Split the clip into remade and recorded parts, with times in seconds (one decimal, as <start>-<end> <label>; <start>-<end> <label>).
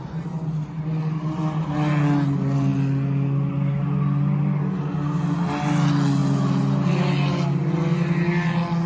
0.0-8.9 recorded